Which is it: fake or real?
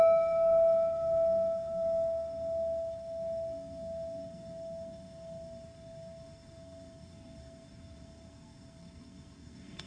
fake